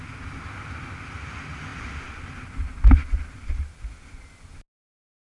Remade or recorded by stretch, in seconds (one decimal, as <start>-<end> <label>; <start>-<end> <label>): 0.0-5.4 recorded